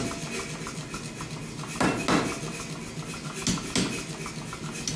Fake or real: real